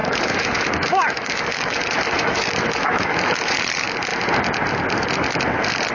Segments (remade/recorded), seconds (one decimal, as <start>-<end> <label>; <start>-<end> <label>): 0.0-3.5 remade; 3.5-5.9 recorded